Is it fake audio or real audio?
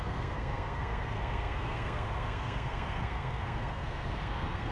fake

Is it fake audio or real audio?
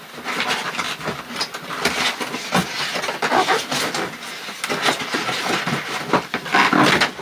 real